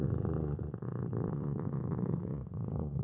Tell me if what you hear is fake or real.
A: fake